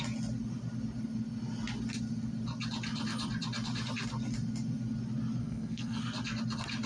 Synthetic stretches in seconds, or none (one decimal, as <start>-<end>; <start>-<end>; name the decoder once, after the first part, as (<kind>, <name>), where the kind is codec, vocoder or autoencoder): 5.4-6.0 (codec, SNAC)